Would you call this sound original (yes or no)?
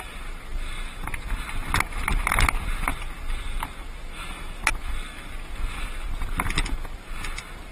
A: yes